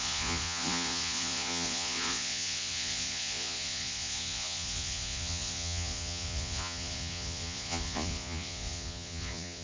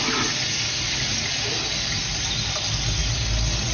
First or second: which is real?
second